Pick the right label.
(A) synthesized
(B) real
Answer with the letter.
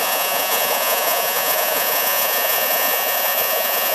A